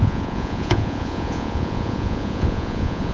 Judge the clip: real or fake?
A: fake